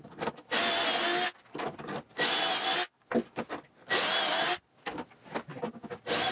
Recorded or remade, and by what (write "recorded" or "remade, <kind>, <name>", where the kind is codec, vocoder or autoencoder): recorded